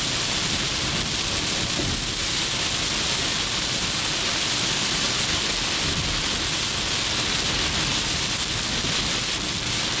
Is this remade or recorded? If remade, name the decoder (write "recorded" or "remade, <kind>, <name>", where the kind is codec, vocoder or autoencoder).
recorded